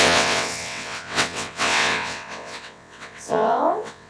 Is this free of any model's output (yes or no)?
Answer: no